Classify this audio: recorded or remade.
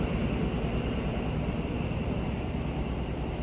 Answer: recorded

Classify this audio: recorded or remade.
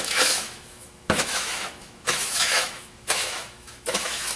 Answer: remade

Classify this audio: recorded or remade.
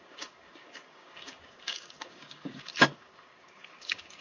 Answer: remade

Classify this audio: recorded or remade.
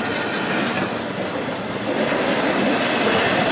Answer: recorded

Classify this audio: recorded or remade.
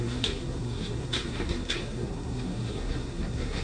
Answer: remade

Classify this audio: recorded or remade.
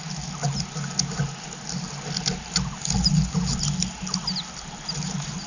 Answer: recorded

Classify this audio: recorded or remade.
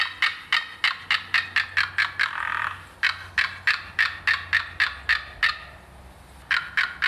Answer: recorded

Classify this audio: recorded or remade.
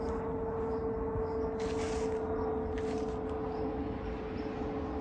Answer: recorded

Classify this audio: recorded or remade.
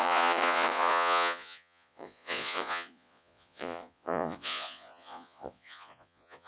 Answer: remade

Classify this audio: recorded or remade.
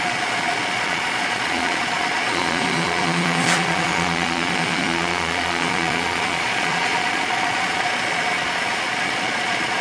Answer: remade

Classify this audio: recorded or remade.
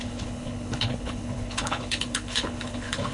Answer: remade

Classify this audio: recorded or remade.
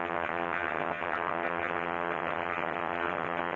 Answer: remade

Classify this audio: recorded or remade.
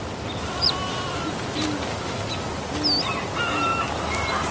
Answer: recorded